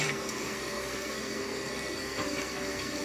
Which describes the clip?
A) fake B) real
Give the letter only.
A